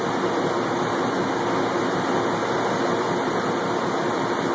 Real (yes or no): yes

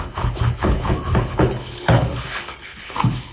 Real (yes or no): no